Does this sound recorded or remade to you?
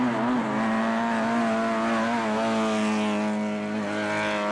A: recorded